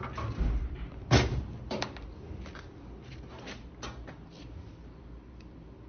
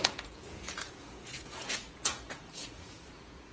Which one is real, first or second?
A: first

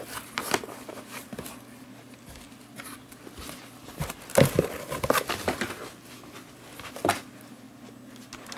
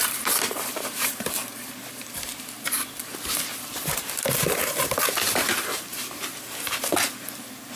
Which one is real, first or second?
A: first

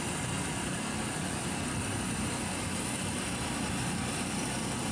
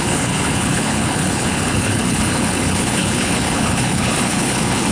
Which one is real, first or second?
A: first